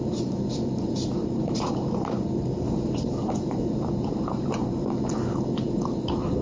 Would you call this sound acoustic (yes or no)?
no